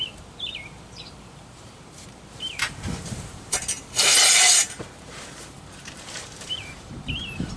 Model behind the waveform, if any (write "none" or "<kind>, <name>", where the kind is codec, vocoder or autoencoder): vocoder, BigVGAN v2